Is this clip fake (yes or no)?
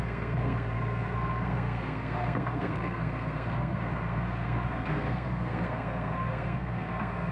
yes